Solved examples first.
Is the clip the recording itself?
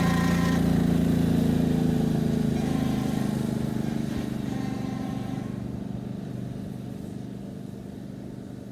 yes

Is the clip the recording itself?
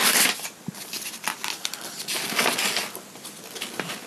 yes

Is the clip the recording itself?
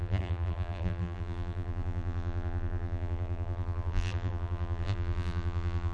no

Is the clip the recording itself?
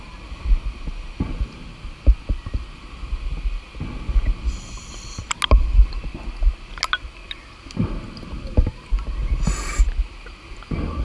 yes